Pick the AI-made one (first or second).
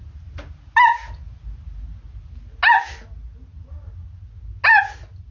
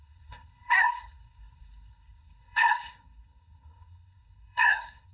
second